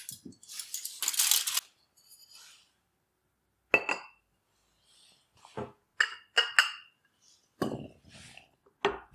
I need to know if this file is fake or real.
real